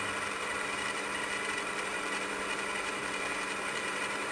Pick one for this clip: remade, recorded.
remade